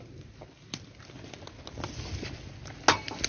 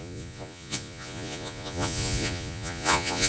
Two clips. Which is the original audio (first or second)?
first